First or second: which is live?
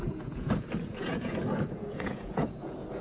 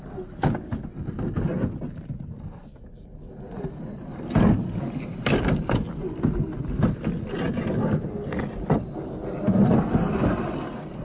second